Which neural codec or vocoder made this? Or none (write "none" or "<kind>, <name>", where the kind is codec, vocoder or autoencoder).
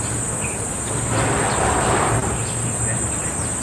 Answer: none